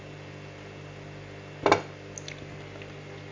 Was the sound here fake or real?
real